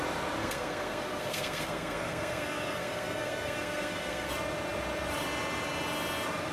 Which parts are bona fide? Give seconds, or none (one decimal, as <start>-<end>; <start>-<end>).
0.0-0.4; 4.3-6.5